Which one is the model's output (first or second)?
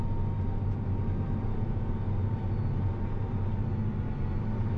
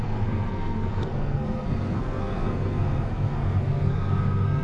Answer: second